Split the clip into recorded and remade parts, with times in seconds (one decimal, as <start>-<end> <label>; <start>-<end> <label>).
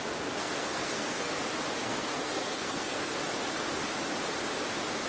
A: 0.0-0.4 recorded; 0.4-1.4 remade; 1.4-1.8 recorded; 1.8-3.1 remade; 3.1-5.1 recorded